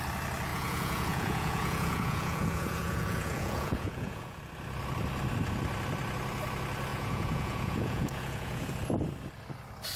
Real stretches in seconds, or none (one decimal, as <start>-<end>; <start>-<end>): 0.0-0.5; 4.4-6.9; 8.7-10.0